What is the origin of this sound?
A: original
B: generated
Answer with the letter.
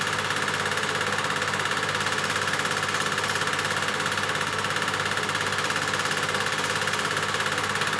A